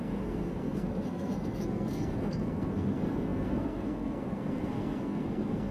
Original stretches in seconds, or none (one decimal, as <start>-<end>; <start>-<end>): none